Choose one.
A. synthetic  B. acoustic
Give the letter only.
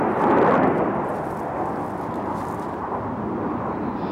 B